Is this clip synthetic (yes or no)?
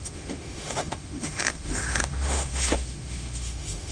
yes